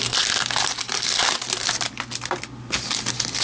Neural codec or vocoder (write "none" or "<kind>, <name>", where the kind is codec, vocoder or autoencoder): none